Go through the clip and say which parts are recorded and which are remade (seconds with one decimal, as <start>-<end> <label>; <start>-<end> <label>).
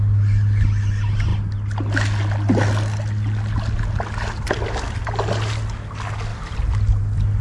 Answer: 0.0-7.4 recorded